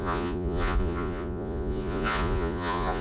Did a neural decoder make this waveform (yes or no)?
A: yes